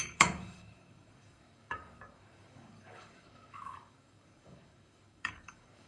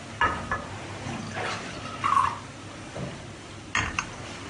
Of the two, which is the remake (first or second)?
first